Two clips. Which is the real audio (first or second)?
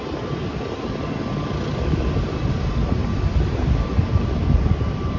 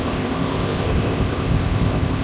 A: first